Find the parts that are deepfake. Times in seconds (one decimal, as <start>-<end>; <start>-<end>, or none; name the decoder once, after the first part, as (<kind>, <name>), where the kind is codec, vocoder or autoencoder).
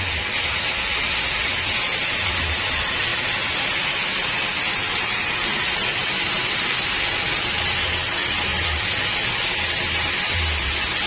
none